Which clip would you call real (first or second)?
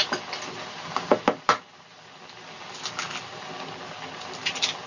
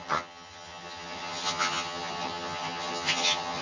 first